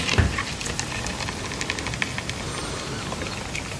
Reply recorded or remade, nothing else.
recorded